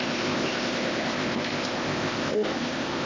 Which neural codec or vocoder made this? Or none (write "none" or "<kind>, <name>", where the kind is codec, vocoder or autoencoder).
codec, ZipCodec